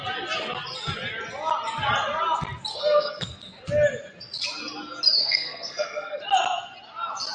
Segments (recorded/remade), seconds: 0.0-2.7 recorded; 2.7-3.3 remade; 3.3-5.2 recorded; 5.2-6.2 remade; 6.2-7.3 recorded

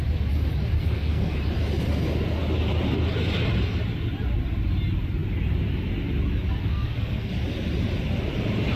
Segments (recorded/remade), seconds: 0.0-0.8 recorded; 0.8-1.4 remade; 1.4-6.6 recorded; 6.6-7.3 remade; 7.3-8.8 recorded

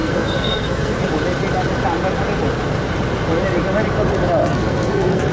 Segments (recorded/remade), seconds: 0.0-1.0 remade; 1.0-4.4 recorded; 4.4-5.3 remade

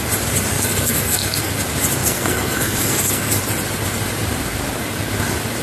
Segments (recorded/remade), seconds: 0.0-0.5 recorded; 0.5-1.5 remade; 1.5-2.0 recorded; 2.0-3.3 remade; 3.3-5.6 recorded

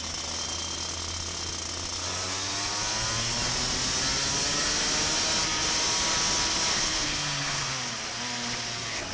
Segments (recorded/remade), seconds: 0.0-6.7 recorded; 6.7-7.7 remade; 7.7-9.1 recorded

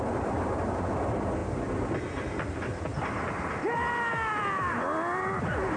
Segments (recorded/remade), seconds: 0.0-5.8 recorded